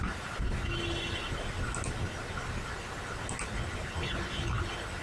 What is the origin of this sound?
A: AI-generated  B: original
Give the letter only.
B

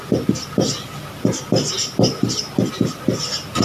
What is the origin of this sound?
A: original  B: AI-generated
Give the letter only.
A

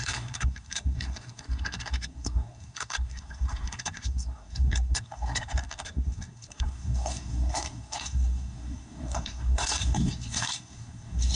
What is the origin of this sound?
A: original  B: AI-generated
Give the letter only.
B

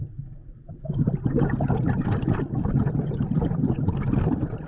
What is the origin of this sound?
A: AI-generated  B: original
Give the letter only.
B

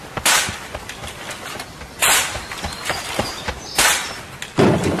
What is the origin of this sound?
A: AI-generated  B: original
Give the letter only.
B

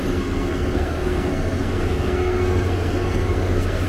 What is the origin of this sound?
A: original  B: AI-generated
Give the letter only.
B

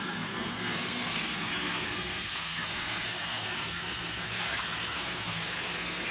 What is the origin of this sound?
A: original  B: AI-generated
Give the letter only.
B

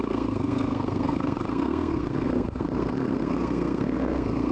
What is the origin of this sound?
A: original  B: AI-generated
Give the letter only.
B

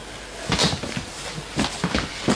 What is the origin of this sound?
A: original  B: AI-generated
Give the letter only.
A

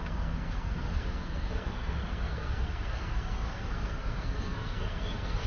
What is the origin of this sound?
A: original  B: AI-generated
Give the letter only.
B